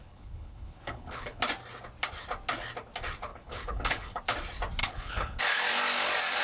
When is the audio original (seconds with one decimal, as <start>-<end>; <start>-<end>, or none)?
1.4-3.3; 4.2-4.8; 5.4-6.4